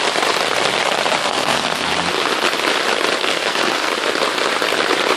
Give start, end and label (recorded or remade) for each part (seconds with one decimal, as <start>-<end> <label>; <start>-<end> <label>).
0.0-1.2 recorded; 1.2-1.9 remade; 1.9-3.2 recorded; 3.2-3.9 remade; 3.9-5.2 recorded